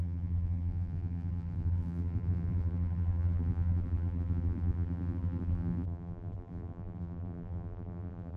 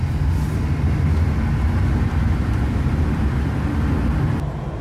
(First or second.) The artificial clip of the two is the first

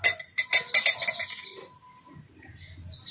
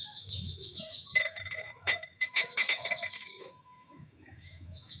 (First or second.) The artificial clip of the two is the second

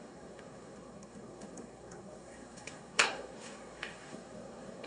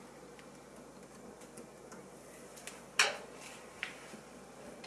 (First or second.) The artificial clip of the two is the first